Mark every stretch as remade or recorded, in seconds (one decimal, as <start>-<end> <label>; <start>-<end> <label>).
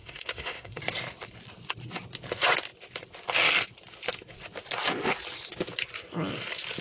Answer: 0.0-0.8 remade; 0.8-6.8 recorded